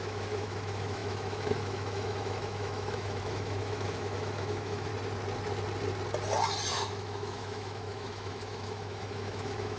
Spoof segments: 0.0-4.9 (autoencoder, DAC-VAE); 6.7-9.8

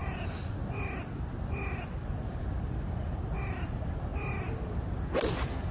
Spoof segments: none

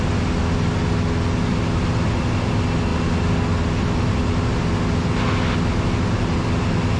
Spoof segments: none

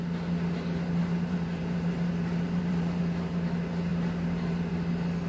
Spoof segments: 1.0-3.0 (vocoder, BigVGAN v2)

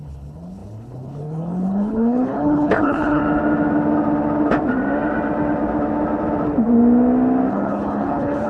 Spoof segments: 0.0-3.2 (codec, HILCodec); 7.5-8.5

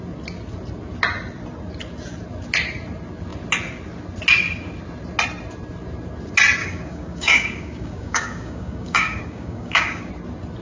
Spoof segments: 6.6-10.1 (codec, DAC)

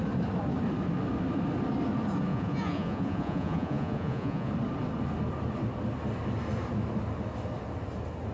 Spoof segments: 2.3-4.5 (vocoder, Vocos)

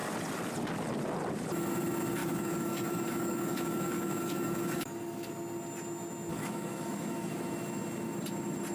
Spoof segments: 2.2-5.3 (codec, DAC); 6.3-7.4